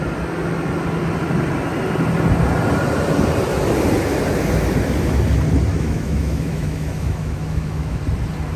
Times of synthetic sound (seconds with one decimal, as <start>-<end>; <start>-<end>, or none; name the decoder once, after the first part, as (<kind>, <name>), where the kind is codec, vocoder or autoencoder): 5.7-8.0 (autoencoder, DAC-VAE)